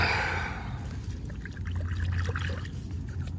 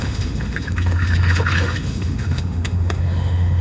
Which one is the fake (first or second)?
second